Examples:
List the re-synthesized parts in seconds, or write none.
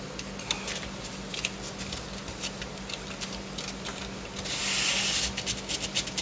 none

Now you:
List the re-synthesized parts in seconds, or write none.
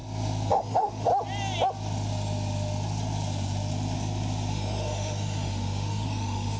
0.5-1.1 (autoencoder, DAC-VAE); 4.5-6.6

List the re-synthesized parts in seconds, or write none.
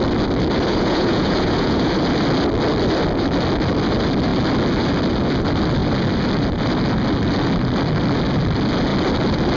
0.7-1.9 (vocoder, Vocos)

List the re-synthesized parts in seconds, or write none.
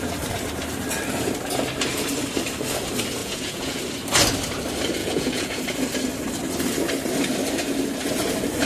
3.2-3.8 (vocoder, Vocos); 5.0-5.6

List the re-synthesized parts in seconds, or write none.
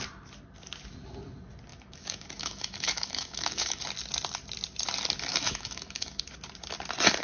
1.7-3.8 (autoencoder, DAC-VAE); 5.3-6.2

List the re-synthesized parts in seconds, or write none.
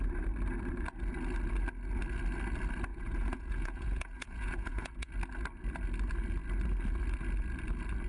2.9-5.1 (vocoder, Vocos)